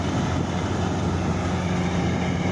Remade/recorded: recorded